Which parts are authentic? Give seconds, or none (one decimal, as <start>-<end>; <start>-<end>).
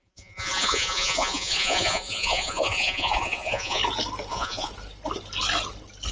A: 3.8-4.3; 4.7-6.1